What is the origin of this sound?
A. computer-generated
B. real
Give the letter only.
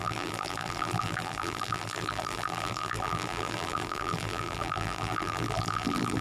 A